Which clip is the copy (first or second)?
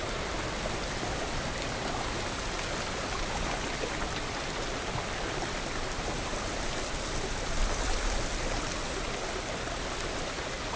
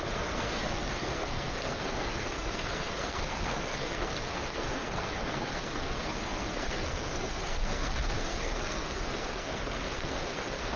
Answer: second